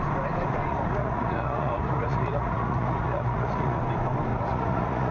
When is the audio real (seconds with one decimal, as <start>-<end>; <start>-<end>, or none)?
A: 0.0-0.7; 3.8-4.3